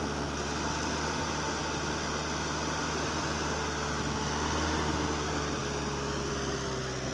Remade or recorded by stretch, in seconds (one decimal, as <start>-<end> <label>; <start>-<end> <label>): 0.0-7.1 recorded